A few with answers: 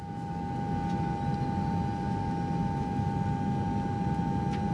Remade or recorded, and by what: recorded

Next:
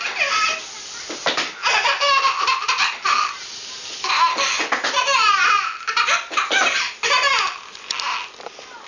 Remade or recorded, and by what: recorded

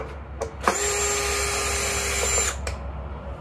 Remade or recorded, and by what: recorded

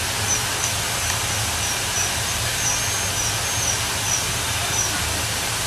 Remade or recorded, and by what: recorded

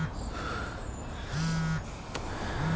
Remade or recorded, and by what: recorded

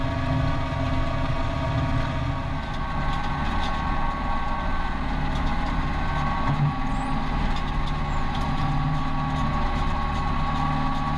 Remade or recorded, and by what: recorded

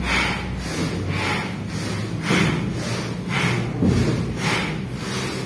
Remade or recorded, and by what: recorded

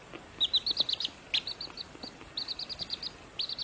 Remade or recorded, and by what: recorded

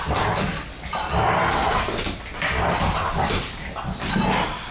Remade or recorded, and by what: recorded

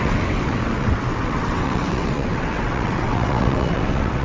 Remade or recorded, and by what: remade, vocoder, WaveNeXt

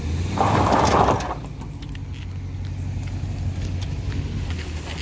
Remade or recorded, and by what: recorded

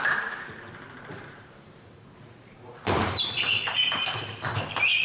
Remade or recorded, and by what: remade, vocoder, BigVGAN v2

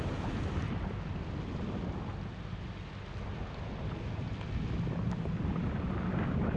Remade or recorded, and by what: recorded